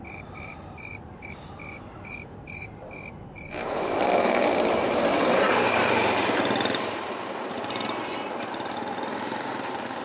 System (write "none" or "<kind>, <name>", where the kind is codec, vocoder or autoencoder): vocoder, BigVGAN v2